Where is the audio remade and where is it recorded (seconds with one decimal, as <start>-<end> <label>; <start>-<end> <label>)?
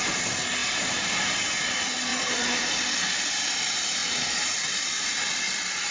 0.0-0.6 recorded; 0.6-1.3 remade; 1.3-2.1 recorded; 2.1-2.7 remade; 2.7-4.0 recorded; 4.0-5.3 remade; 5.3-5.9 recorded